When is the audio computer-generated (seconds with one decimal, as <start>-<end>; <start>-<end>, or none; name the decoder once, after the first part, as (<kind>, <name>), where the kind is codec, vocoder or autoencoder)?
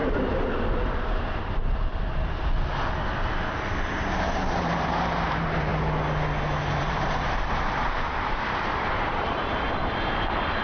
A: 4.2-5.7 (vocoder, BigVGAN v2); 6.8-10.6